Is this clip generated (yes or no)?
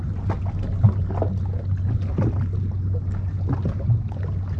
no